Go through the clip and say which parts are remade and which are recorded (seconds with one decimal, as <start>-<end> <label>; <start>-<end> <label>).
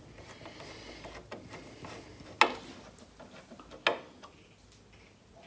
0.0-5.5 recorded